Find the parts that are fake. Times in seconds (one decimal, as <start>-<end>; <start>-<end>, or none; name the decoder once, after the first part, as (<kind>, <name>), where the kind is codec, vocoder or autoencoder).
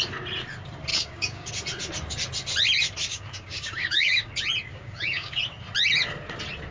0.9-1.5 (codec, DAC); 3.1-4.3; 4.7-5.4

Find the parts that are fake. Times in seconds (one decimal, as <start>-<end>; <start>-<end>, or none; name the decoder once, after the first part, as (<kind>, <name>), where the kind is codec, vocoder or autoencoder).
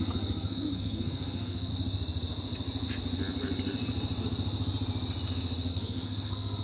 0.0-1.7 (codec, SNAC); 5.7-6.6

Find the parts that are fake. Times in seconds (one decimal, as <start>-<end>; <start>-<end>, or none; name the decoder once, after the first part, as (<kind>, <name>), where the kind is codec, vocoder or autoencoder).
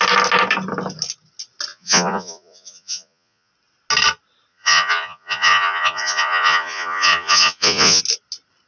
1.7-3.5 (vocoder, Vocos); 4.5-8.0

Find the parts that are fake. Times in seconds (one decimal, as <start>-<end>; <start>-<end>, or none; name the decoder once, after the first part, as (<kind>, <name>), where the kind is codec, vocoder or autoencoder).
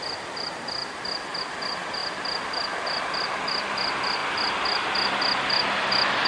none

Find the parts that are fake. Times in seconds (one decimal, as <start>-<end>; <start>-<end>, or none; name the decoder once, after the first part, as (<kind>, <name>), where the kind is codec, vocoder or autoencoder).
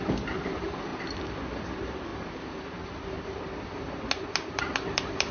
0.0-0.9 (vocoder, BigVGAN v2); 1.6-2.1; 4.6-5.3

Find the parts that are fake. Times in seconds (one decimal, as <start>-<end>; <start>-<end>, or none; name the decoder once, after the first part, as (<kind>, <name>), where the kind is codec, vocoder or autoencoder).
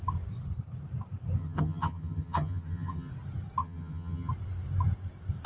1.4-3.1 (vocoder, HiFi-GAN); 3.6-4.3